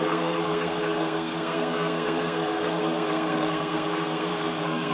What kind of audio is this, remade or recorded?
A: remade